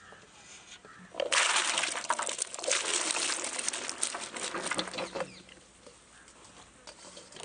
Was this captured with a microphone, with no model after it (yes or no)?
yes